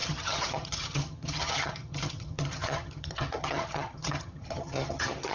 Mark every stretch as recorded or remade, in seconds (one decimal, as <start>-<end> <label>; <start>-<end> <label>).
0.0-5.3 remade